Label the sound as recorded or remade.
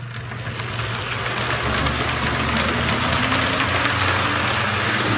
recorded